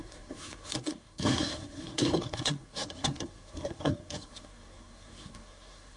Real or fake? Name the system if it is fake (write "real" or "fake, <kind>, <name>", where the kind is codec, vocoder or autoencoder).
fake, codec, SNAC